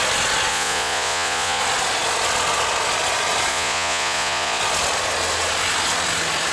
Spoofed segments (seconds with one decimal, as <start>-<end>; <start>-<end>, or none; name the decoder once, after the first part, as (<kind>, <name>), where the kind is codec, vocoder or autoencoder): 0.5-1.6 (vocoder, Vocos); 3.5-4.6